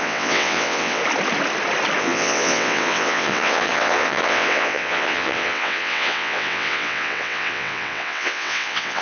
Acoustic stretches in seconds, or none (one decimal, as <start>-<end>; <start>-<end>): 1.0-2.0